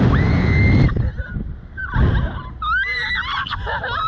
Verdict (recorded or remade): recorded